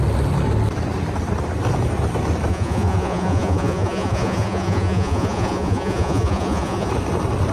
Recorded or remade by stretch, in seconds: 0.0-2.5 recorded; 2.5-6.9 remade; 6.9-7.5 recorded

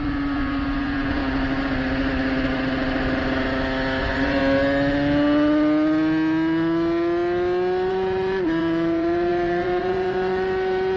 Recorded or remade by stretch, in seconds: 0.0-1.2 remade; 1.2-4.0 recorded; 4.0-4.4 remade; 4.4-7.9 recorded; 7.9-11.0 remade